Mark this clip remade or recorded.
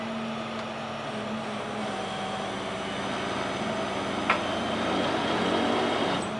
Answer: recorded